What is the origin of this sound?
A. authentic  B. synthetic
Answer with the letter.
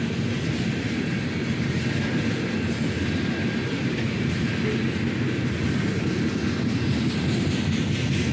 A